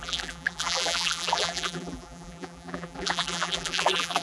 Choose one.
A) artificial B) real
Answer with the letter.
A